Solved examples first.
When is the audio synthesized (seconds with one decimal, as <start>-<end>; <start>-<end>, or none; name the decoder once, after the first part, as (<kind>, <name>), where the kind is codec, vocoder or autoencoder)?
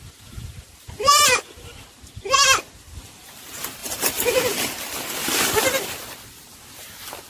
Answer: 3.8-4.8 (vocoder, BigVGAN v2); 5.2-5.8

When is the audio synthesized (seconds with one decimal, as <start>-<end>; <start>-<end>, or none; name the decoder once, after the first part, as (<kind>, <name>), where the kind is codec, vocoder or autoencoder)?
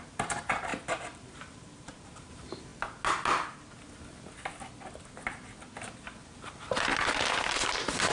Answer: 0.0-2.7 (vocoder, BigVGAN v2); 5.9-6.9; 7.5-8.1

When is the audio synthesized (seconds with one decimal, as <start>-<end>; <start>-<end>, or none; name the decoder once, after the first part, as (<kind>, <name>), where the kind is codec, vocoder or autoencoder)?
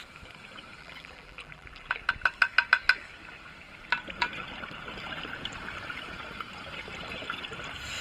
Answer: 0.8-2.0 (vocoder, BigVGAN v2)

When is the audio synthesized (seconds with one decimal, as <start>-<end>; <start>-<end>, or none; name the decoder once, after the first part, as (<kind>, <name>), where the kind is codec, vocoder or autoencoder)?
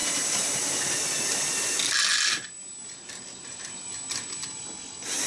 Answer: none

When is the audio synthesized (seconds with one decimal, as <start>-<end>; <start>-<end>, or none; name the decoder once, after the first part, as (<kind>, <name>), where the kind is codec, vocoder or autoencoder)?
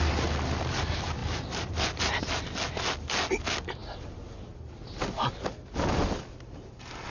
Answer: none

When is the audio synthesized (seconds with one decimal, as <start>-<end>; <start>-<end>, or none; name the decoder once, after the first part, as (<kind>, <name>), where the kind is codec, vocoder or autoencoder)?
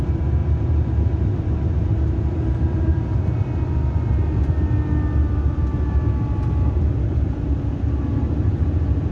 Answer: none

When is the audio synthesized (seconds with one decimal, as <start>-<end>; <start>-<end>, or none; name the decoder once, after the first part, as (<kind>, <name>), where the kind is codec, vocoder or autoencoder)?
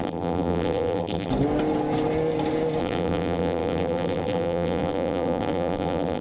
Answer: 0.0-1.3 (vocoder, BigVGAN v2); 2.8-6.2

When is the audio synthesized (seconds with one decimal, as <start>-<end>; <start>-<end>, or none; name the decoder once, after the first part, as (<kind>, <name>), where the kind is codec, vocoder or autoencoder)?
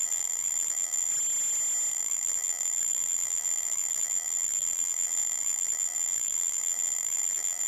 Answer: 0.0-1.1 (vocoder, BigVGAN v2); 1.9-7.7